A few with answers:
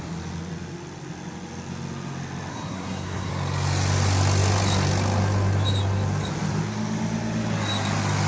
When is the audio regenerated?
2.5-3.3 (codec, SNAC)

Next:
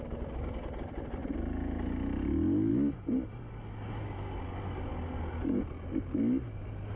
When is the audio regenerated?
none

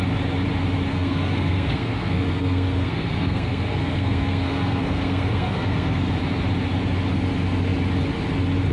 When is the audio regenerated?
0.9-6.1 (codec, SNAC)